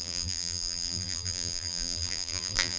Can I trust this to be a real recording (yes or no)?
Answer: no